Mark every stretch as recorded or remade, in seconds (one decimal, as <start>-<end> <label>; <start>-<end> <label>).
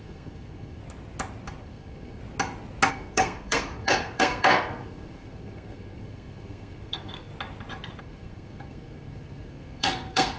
0.0-0.8 remade; 0.8-1.6 recorded; 1.6-2.2 remade; 2.2-2.9 recorded; 2.9-7.3 remade; 7.3-8.0 recorded; 8.0-10.4 remade